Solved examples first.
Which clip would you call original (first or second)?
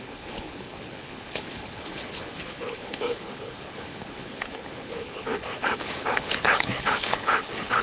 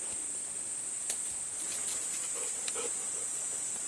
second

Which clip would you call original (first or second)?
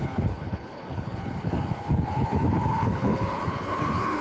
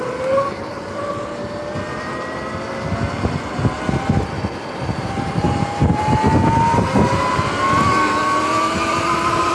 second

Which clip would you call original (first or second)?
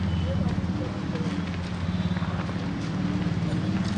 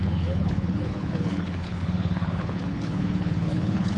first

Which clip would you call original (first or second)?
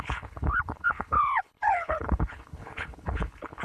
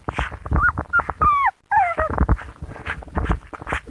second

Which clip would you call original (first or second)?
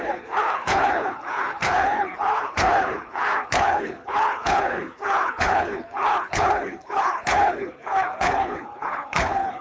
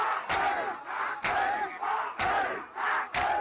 second